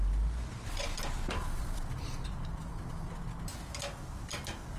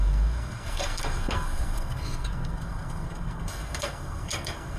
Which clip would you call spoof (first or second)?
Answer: second